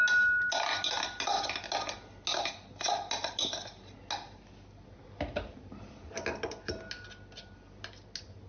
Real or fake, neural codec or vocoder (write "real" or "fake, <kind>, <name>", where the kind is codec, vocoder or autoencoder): real